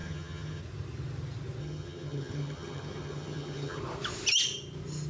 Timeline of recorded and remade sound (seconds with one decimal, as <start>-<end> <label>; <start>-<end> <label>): 0.0-0.6 remade; 0.6-1.6 recorded; 1.6-3.8 remade; 3.8-5.1 recorded